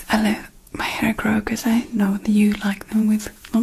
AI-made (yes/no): yes